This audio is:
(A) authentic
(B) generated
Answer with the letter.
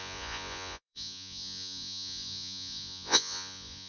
B